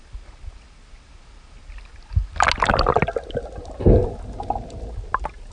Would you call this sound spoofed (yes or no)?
no